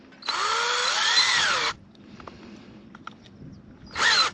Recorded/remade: recorded